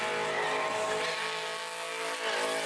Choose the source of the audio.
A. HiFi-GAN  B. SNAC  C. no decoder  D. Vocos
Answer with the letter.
C